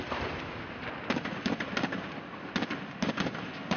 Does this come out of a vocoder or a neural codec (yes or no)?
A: no